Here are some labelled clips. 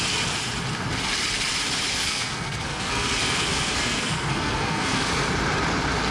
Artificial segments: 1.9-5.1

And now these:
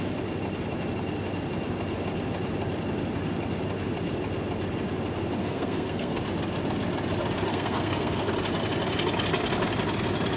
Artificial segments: 5.4-6.2; 7.5-8.3